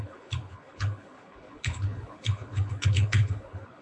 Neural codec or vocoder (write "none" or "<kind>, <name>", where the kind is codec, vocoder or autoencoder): codec, HILCodec